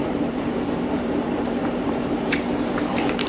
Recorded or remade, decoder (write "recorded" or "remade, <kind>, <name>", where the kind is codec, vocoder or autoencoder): remade, vocoder, BigVGAN v2